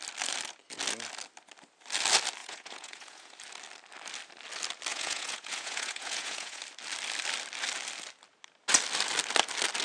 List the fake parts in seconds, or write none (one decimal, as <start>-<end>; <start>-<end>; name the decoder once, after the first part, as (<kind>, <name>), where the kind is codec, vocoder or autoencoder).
2.4-3.3 (vocoder, Vocos); 4.9-6.6